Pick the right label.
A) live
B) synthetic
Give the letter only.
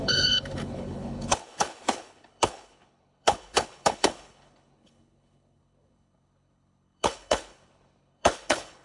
B